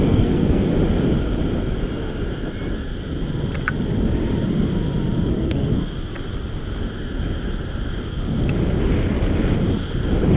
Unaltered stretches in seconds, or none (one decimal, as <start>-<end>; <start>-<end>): 0.7-5.3; 5.7-10.4